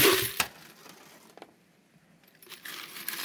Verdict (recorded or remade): remade